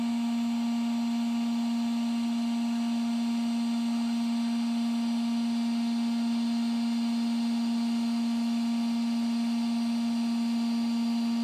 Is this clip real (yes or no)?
yes